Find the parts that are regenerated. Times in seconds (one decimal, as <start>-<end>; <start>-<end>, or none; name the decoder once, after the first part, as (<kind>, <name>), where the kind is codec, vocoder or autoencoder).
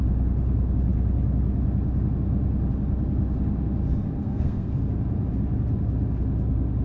4.2-4.8 (codec, SNAC)